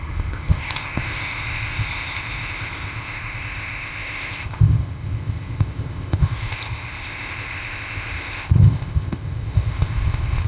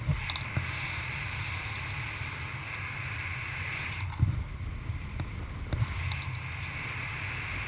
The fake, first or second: first